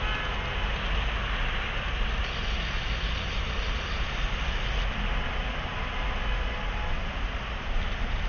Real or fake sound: real